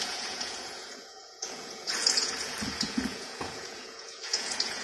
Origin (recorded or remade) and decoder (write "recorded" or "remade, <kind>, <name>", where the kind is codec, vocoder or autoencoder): remade, vocoder, Vocos